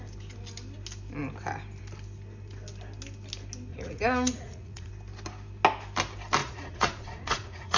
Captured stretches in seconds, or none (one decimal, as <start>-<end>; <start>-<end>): 0.0-3.7; 4.9-6.4